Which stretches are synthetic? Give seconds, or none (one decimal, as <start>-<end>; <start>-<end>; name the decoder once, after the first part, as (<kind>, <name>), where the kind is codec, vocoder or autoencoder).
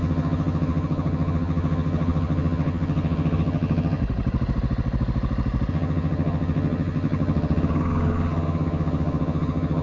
0.0-4.0 (vocoder, HiFi-GAN); 5.7-9.8